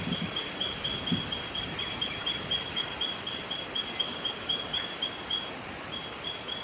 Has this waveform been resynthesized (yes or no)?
no